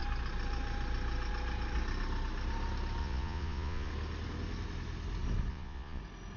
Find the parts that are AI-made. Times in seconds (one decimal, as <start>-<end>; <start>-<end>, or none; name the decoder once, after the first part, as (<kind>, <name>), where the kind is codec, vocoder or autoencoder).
3.0-3.9 (vocoder, Vocos); 5.5-6.0